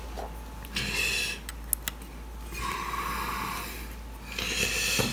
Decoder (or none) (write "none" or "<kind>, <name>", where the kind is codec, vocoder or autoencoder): none